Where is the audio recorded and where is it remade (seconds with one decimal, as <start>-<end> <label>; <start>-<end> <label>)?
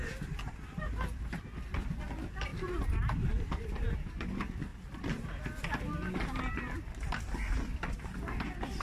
0.0-8.8 recorded